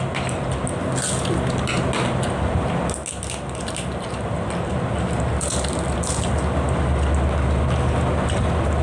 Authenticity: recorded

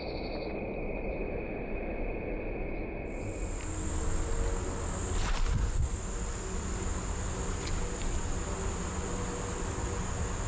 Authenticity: recorded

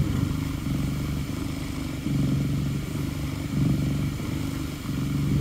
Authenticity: remade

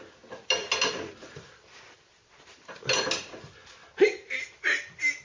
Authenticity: recorded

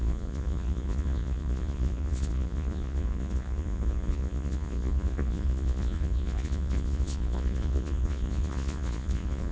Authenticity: remade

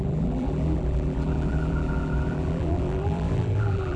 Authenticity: remade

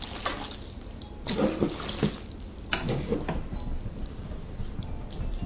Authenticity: recorded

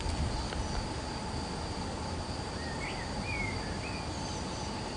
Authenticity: recorded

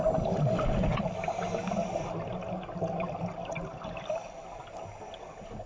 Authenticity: recorded